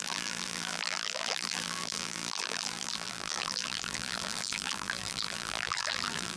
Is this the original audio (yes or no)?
no